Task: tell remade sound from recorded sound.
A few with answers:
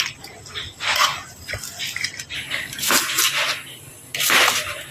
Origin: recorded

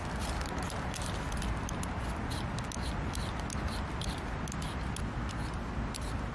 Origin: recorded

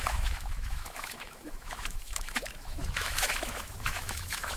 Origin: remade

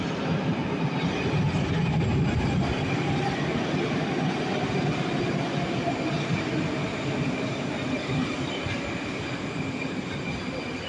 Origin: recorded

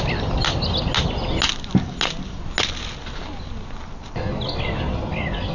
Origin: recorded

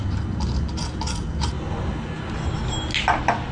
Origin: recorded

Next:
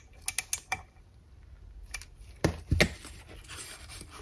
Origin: recorded